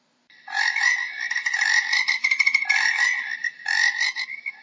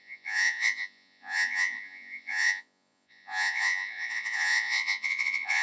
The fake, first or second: second